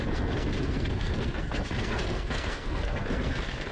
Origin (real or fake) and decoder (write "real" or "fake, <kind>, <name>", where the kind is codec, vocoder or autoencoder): fake, codec, SNAC